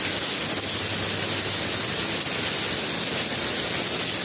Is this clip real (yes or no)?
yes